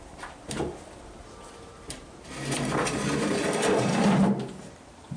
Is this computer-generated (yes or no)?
yes